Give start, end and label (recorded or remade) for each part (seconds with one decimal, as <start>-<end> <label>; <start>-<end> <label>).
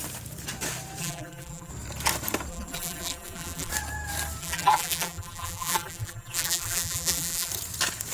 0.0-1.0 recorded; 1.0-1.7 remade; 1.7-2.5 recorded; 2.5-3.7 remade; 3.7-4.4 recorded; 4.4-7.5 remade; 7.5-8.1 recorded